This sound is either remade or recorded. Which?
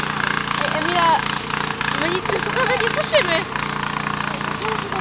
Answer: recorded